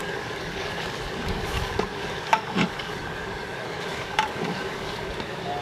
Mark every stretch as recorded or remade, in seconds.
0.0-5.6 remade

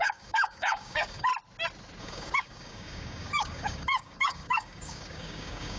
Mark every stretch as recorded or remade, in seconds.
0.0-1.3 remade; 1.3-2.0 recorded; 2.0-5.8 remade

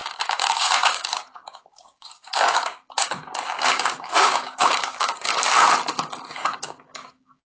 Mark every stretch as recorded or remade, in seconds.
0.0-5.3 remade; 5.3-6.3 recorded; 6.3-7.6 remade

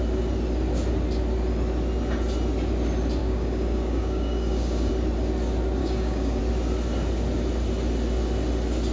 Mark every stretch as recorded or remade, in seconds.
0.0-3.2 recorded; 3.2-4.9 remade; 4.9-5.8 recorded; 5.8-6.4 remade; 6.4-8.9 recorded

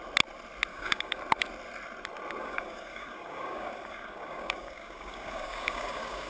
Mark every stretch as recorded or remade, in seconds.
0.0-0.7 recorded; 0.7-1.2 remade; 1.2-2.4 recorded; 2.4-6.3 remade

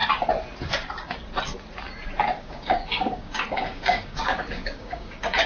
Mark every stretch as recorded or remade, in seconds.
0.0-2.4 recorded; 2.4-5.5 remade